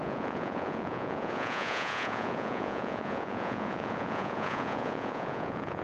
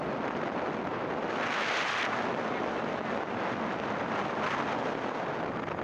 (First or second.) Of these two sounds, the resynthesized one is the first